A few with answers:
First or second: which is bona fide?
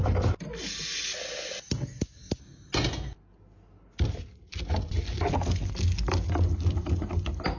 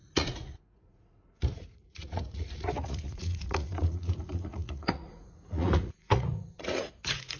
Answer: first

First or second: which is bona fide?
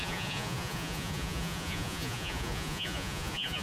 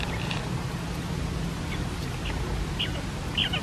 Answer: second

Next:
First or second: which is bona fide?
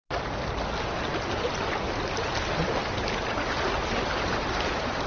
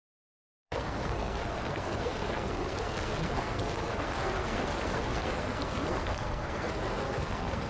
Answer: first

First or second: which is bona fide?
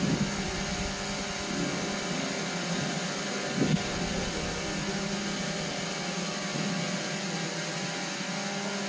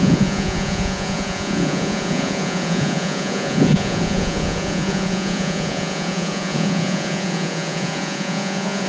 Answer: first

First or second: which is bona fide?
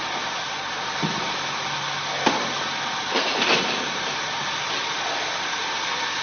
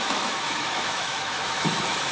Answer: first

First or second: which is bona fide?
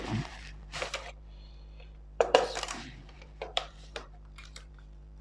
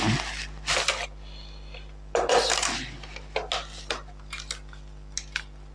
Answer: second